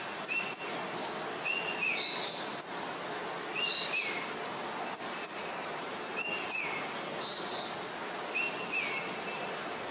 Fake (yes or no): no